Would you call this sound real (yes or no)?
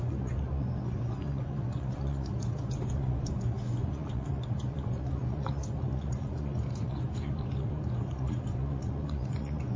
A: no